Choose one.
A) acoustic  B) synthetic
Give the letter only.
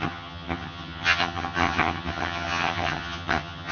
B